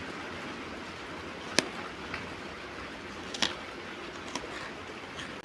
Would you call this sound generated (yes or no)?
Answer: no